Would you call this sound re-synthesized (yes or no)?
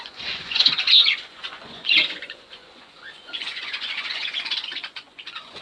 yes